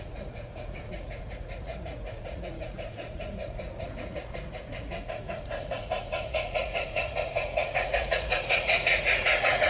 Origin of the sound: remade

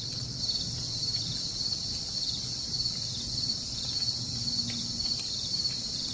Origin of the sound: recorded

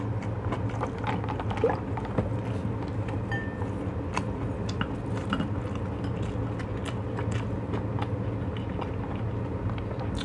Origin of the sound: recorded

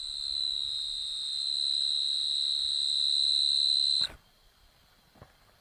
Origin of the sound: remade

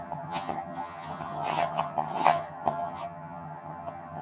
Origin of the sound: remade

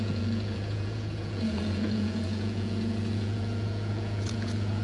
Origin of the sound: remade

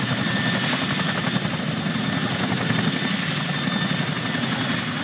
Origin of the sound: recorded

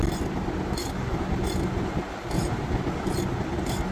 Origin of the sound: recorded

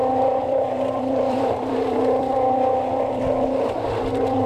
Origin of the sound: remade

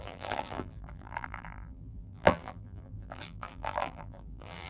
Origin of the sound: remade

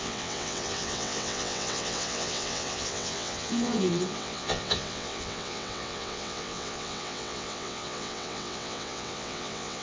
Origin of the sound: remade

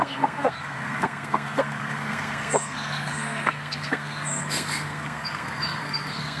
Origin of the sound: remade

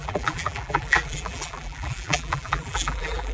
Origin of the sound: remade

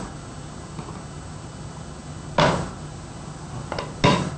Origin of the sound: recorded